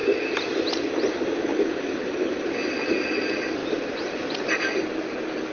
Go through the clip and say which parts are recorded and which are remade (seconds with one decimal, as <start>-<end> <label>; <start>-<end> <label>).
0.0-1.0 remade; 1.0-3.6 recorded; 3.6-4.3 remade; 4.3-5.5 recorded